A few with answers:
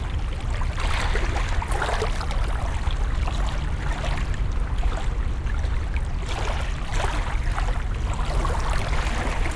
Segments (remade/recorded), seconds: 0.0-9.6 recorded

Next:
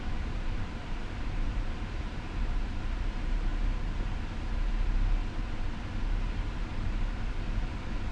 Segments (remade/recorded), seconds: 0.0-3.5 remade; 3.5-6.3 recorded; 6.3-8.1 remade